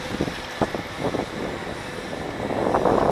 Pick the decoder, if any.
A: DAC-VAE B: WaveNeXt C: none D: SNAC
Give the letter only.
C